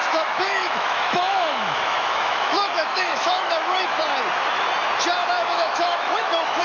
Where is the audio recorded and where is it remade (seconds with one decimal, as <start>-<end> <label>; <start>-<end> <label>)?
0.0-4.0 remade; 4.0-5.2 recorded; 5.2-6.6 remade